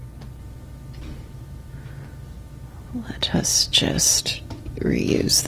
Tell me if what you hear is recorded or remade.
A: recorded